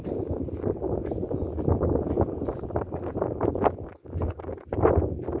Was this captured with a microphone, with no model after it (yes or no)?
yes